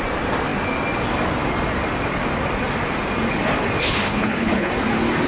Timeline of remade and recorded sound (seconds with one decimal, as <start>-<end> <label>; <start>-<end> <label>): 0.0-3.8 recorded; 3.8-4.7 remade; 4.7-5.3 recorded